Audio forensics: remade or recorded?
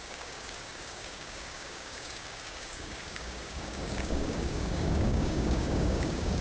remade